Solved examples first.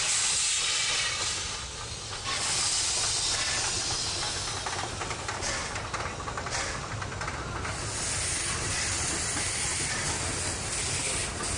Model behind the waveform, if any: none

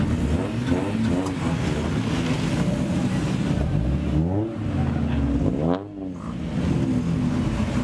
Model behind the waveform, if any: none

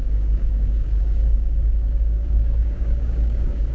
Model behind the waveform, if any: codec, DAC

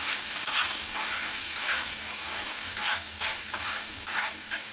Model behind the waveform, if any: codec, DAC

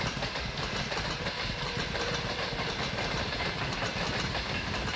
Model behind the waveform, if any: vocoder, BigVGAN v2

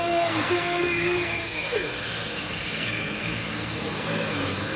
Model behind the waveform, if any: codec, SNAC